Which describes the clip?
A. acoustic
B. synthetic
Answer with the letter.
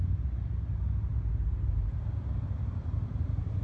A